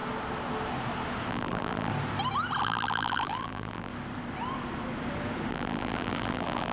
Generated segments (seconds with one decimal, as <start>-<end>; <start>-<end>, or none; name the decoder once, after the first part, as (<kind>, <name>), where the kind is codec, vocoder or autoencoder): 1.3-1.9 (vocoder, BigVGAN v2); 2.6-3.9; 5.5-6.7